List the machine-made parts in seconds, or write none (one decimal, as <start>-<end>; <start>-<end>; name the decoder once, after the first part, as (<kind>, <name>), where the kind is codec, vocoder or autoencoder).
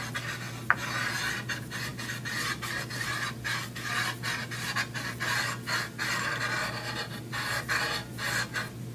none